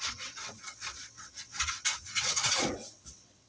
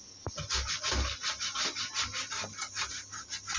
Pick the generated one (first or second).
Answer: first